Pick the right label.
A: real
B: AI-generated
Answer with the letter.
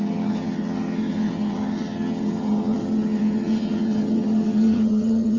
B